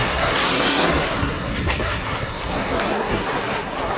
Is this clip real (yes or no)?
no